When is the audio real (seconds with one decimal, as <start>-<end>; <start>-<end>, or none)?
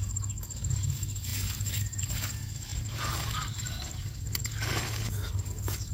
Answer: none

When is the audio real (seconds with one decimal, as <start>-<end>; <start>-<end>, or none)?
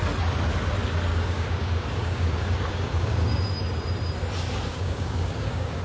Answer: 0.0-1.1; 3.4-4.7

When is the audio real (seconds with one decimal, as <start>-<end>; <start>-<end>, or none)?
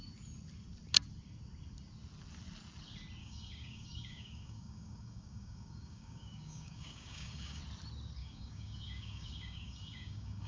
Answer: 0.0-3.2; 7.6-8.2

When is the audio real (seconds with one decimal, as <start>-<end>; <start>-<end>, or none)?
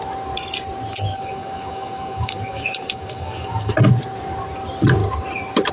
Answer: 0.0-1.1; 3.7-5.7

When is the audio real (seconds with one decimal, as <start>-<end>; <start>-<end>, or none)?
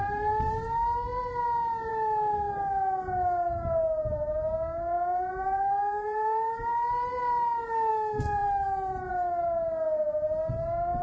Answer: 0.0-11.0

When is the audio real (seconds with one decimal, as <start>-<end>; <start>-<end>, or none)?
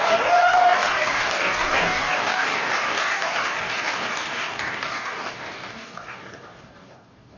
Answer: none